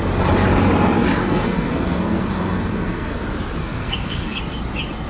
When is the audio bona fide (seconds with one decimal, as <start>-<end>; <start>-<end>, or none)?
0.0-1.2; 3.2-3.6; 4.4-5.1